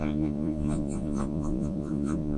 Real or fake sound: fake